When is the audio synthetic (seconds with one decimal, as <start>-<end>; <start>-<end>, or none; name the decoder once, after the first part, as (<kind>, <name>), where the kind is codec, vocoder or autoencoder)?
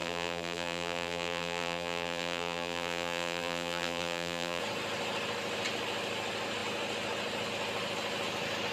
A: 0.0-4.6 (vocoder, BigVGAN v2)